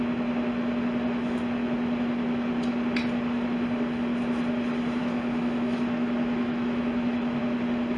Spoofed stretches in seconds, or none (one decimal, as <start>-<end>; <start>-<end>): 5.0-7.4